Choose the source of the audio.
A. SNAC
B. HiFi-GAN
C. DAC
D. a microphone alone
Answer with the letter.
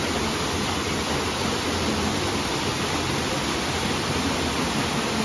D